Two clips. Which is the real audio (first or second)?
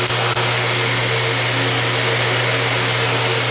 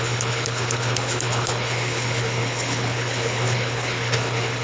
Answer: first